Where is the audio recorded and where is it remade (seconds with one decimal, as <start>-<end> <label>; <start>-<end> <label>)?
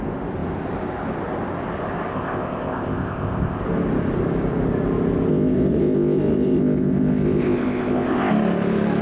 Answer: 0.0-2.1 recorded; 2.1-3.6 remade; 3.6-5.3 recorded; 5.3-8.3 remade; 8.3-9.0 recorded